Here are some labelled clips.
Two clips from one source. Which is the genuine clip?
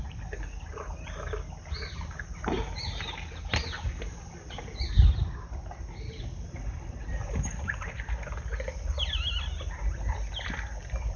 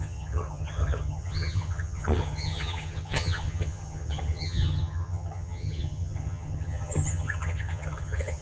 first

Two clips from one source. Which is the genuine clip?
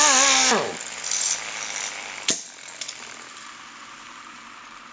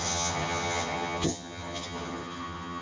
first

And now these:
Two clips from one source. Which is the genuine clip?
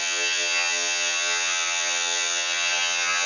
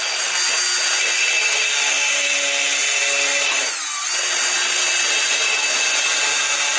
second